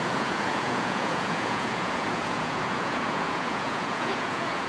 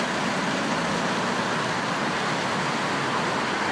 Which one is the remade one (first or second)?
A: first